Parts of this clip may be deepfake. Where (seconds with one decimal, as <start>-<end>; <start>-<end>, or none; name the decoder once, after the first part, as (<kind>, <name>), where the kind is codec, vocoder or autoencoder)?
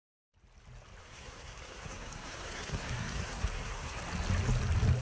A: 1.0-4.0 (codec, SNAC)